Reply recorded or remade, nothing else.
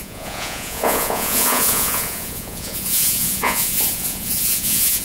remade